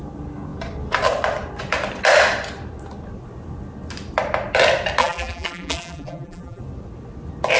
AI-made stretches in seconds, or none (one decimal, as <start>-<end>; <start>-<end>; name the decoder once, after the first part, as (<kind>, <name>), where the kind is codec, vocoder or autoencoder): 5.0-6.6 (vocoder, BigVGAN v2)